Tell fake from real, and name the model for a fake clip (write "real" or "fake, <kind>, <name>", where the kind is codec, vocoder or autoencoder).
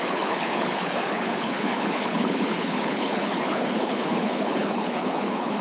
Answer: fake, codec, HILCodec